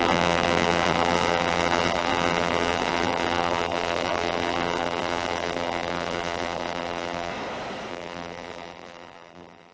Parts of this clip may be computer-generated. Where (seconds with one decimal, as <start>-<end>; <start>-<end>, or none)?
0.0-7.3; 7.9-9.7